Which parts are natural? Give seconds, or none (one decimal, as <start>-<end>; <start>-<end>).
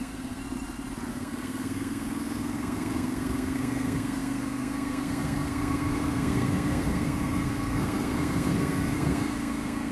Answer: 0.4-1.1